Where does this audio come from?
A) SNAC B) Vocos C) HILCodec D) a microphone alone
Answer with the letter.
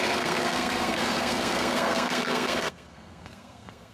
A